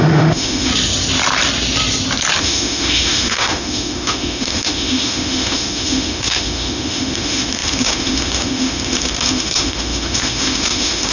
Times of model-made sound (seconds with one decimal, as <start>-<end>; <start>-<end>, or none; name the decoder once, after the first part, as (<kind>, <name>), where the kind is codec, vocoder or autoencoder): 0.0-0.7 (autoencoder, DAC-VAE); 2.4-11.1